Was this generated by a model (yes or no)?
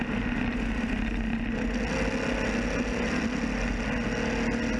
no